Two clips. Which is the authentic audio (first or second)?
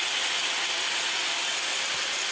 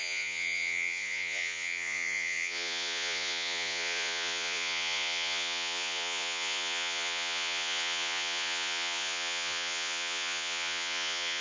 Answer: first